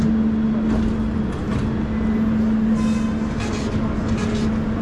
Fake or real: real